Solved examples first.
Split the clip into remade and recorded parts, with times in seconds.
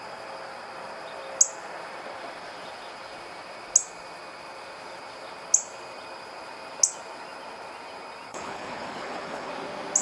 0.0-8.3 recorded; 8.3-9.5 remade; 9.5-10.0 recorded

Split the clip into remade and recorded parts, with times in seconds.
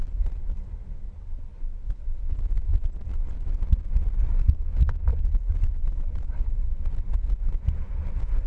0.0-8.5 recorded